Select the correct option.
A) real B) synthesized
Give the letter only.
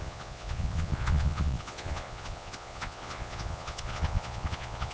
B